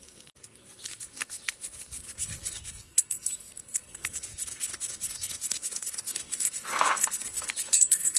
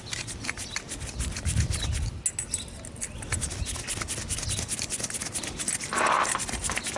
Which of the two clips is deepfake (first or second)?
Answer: first